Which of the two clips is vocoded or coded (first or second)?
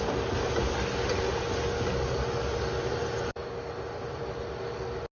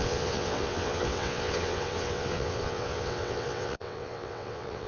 second